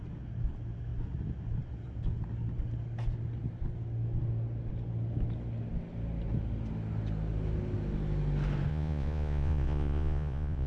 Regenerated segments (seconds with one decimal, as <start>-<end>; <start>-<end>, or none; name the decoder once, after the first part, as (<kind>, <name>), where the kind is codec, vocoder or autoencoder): 8.7-10.7 (vocoder, Vocos)